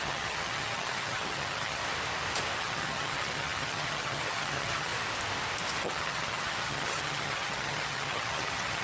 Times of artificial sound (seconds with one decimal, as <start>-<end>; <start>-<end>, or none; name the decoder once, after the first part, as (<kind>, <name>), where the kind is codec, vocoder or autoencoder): 0.0-1.8 (vocoder, HiFi-GAN); 2.6-4.9; 5.8-8.8